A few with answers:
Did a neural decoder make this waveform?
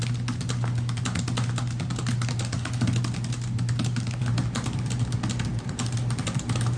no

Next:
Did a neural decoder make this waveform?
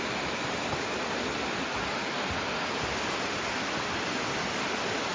no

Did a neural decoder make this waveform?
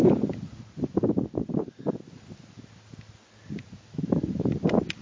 no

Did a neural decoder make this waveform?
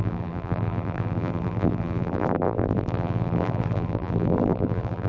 yes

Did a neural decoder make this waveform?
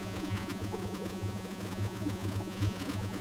yes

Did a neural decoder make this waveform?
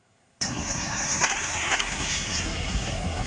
yes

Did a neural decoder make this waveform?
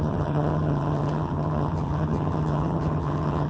yes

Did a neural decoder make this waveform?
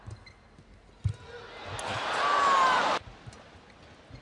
no